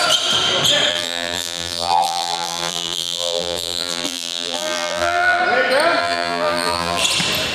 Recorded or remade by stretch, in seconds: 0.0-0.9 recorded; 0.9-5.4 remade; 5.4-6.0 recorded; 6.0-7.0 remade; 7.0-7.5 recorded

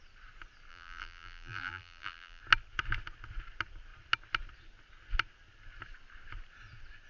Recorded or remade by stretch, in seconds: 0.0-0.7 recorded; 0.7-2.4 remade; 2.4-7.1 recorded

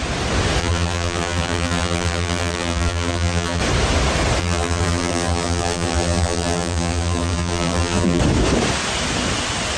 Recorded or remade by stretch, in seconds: 0.0-0.6 recorded; 0.6-3.6 remade; 3.6-4.4 recorded; 4.4-8.2 remade; 8.2-9.8 recorded

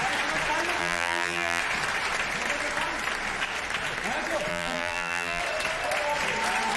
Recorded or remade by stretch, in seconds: 0.0-0.8 recorded; 0.8-1.6 remade; 1.6-4.5 recorded; 4.5-5.4 remade; 5.4-6.8 recorded

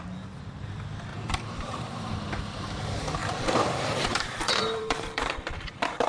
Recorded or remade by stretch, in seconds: 0.0-1.1 recorded; 1.1-2.1 remade; 2.1-3.2 recorded; 3.2-6.1 remade

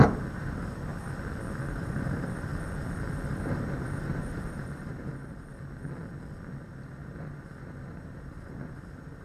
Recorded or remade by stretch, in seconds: 0.0-0.9 remade; 0.9-1.6 recorded; 1.6-2.5 remade; 2.5-3.3 recorded; 3.3-5.5 remade; 5.5-6.6 recorded; 6.6-9.2 remade

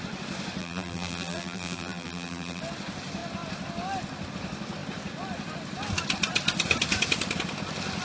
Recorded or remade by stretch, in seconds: 0.0-0.6 recorded; 0.6-2.6 remade; 2.6-8.0 recorded

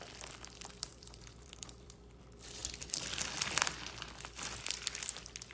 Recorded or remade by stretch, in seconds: 0.0-0.9 recorded; 0.9-2.2 remade; 2.2-2.6 recorded; 2.6-3.2 remade; 3.2-5.5 recorded